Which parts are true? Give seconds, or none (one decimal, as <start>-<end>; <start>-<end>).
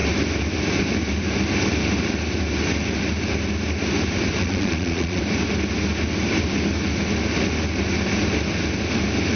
0.0-4.4; 5.2-9.3